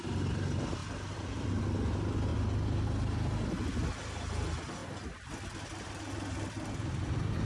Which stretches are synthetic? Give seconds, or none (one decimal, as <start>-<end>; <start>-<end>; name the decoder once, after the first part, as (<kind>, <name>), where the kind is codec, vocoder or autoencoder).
0.8-1.6 (vocoder, BigVGAN v2); 4.8-5.4